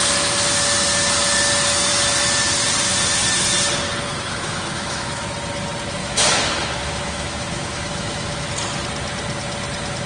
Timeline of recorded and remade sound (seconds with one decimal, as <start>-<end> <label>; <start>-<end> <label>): 0.0-4.1 recorded; 4.1-5.2 remade; 5.2-6.0 recorded; 6.0-8.5 remade; 8.5-10.1 recorded